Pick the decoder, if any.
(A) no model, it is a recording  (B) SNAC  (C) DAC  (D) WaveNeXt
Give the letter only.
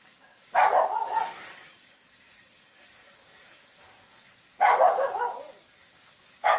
C